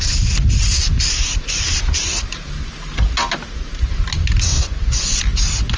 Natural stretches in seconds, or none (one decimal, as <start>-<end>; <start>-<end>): 0.0-4.5; 5.2-5.8